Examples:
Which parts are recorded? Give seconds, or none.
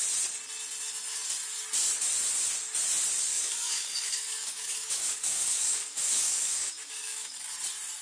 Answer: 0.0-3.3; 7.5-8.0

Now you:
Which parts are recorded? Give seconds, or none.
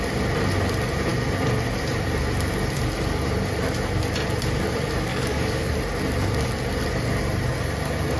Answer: 0.0-5.1; 5.7-8.2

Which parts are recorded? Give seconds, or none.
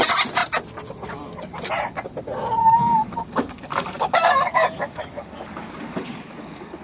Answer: 0.0-2.6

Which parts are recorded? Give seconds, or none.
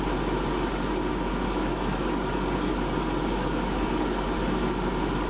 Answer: 0.0-1.3; 4.2-5.3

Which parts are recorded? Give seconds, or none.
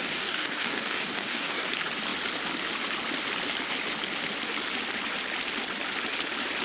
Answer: 1.7-6.6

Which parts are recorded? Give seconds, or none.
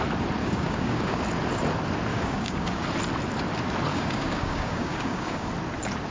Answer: 0.0-0.4; 1.2-2.1; 2.8-3.9; 5.5-6.1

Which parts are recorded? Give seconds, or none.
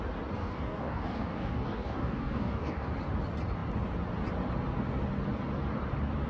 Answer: 0.0-0.4; 2.9-6.3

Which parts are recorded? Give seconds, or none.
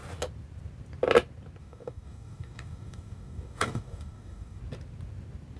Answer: 0.0-1.6; 4.6-5.6